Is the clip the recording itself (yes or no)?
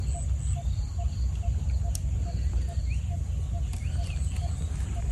yes